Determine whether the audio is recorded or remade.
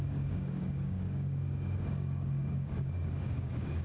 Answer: remade